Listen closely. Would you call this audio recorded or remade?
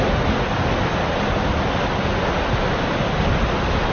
recorded